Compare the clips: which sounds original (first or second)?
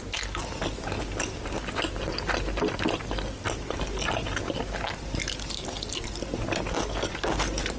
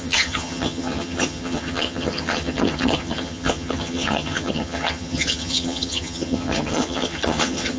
first